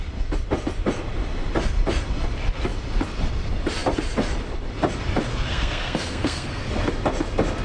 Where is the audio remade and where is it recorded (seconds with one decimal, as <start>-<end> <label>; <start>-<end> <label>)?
0.0-5.3 recorded; 5.3-6.7 remade; 6.7-7.6 recorded

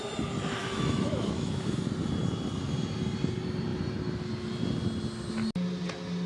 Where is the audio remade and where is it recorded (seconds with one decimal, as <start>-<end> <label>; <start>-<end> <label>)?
0.0-0.6 recorded; 0.6-1.8 remade; 1.8-6.3 recorded